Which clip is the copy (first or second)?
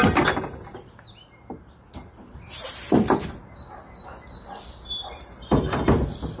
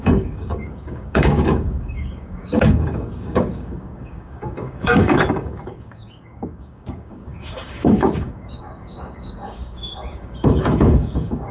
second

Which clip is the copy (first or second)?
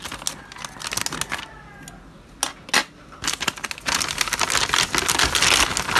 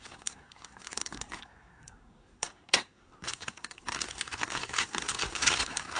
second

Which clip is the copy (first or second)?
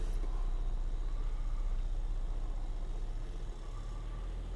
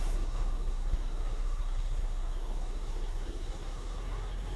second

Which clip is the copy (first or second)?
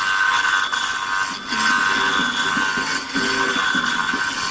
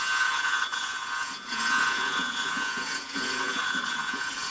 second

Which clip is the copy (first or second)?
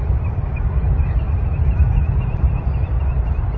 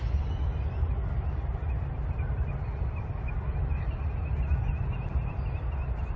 first